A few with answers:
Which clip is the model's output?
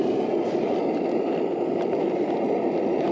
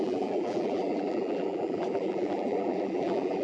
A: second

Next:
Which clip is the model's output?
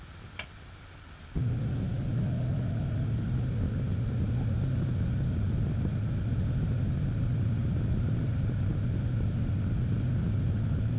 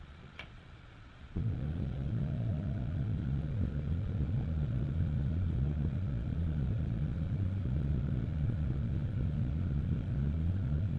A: second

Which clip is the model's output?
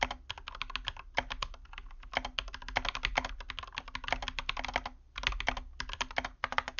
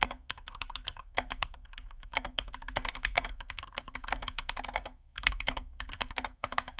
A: second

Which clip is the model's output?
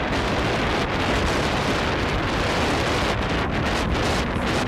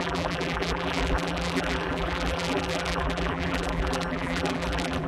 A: second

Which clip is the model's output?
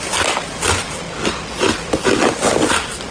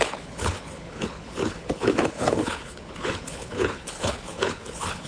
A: second